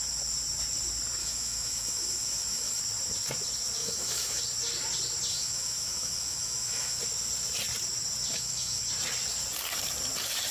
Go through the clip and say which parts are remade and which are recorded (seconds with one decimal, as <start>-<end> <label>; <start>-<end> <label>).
0.0-1.2 recorded; 1.2-2.8 remade; 2.8-3.8 recorded; 3.8-4.4 remade; 4.4-5.3 recorded; 5.3-7.0 remade; 7.0-8.3 recorded; 8.3-8.8 remade; 8.8-10.5 recorded